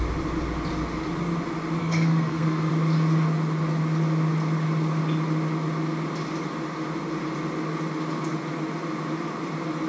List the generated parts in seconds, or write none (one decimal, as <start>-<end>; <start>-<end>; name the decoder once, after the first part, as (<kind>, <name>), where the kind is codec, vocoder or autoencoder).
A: 1.8-2.7 (codec, SNAC)